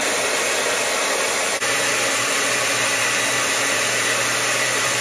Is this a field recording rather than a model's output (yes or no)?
no